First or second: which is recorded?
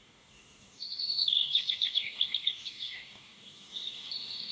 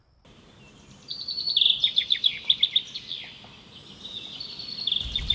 second